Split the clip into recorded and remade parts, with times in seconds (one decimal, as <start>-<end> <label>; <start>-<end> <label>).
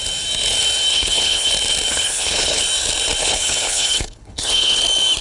0.0-0.9 recorded; 0.9-1.5 remade; 1.5-1.9 recorded; 1.9-2.6 remade; 2.6-3.2 recorded; 3.2-4.8 remade; 4.8-5.2 recorded